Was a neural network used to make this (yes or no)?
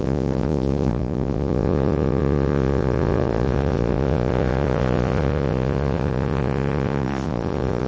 yes